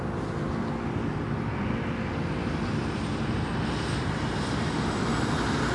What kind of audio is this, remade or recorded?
recorded